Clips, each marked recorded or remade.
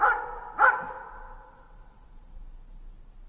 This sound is recorded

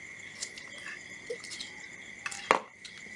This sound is recorded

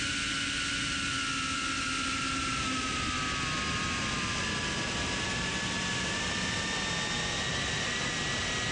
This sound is recorded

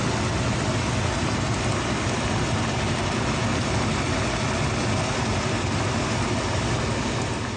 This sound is recorded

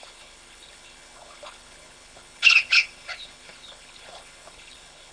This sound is remade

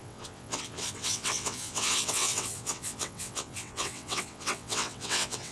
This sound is remade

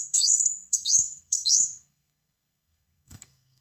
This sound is remade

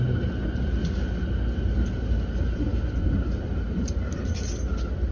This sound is recorded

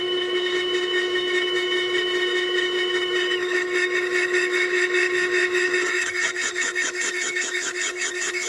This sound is remade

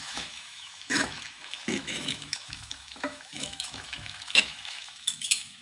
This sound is remade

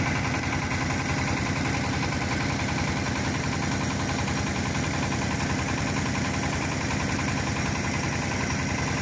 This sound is recorded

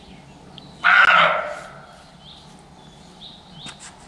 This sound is recorded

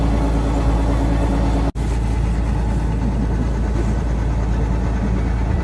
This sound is recorded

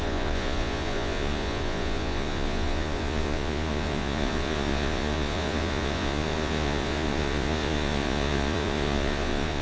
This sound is remade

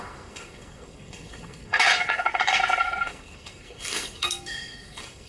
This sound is remade